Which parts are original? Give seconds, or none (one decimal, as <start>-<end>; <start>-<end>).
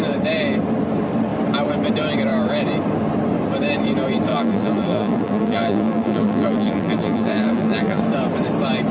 0.0-4.3; 8.0-8.9